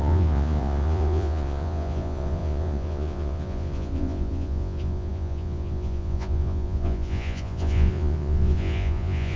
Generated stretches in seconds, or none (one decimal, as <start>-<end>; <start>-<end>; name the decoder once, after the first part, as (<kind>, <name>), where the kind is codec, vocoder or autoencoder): 0.0-9.4 (vocoder, Vocos)